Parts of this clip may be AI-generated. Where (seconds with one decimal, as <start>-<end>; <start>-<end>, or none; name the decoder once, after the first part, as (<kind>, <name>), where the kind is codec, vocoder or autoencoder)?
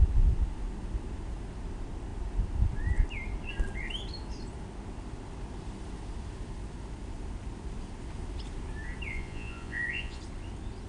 9.1-10.2 (vocoder, Vocos)